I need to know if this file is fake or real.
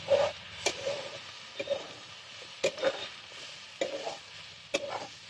real